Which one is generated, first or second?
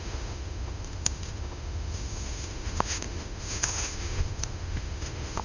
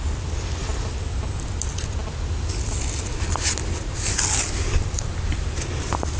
first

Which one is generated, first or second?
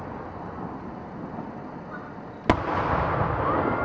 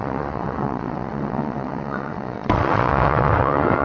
second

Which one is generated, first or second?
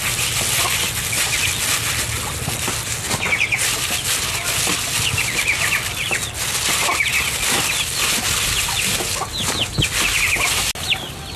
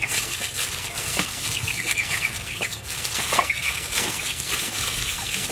second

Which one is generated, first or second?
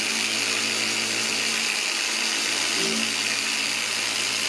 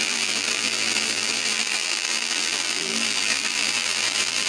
second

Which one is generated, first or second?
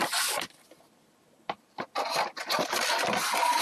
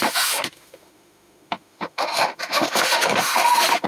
second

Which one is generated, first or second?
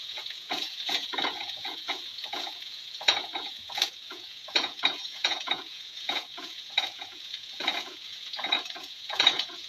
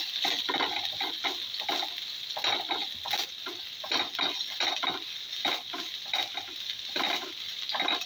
first